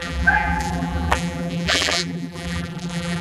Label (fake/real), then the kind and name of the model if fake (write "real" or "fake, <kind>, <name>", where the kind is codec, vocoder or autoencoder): fake, vocoder, BigVGAN v2